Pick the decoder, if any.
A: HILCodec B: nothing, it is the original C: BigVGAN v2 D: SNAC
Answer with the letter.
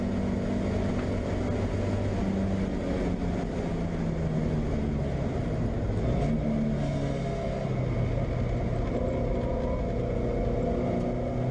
B